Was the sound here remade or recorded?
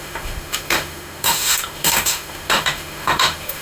remade